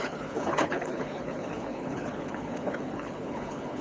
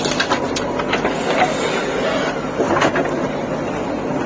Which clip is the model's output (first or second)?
first